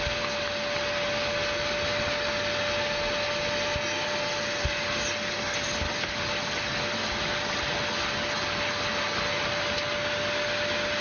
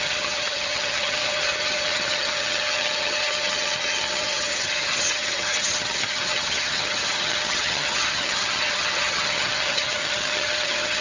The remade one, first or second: second